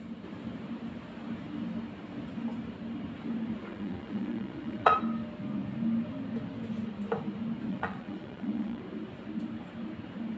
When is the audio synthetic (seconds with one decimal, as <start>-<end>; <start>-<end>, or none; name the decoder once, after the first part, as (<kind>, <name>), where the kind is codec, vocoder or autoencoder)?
3.7-5.0 (vocoder, Vocos); 7.7-8.8